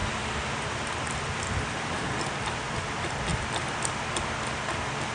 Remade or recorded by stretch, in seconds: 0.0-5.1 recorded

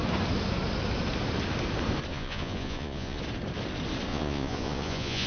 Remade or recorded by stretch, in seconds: 0.0-2.1 recorded; 2.1-3.2 remade; 3.2-4.1 recorded; 4.1-5.3 remade